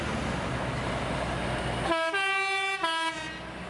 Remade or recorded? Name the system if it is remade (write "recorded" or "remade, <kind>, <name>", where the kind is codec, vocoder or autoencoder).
recorded